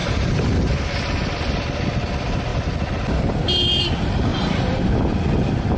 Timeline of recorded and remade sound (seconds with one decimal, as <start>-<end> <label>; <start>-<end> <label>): 0.0-0.7 remade; 0.7-4.3 recorded; 4.3-4.9 remade; 4.9-5.8 recorded